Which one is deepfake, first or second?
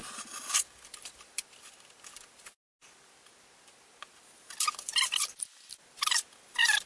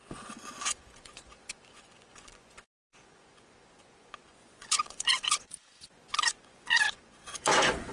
second